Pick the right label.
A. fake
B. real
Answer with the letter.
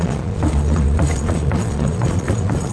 A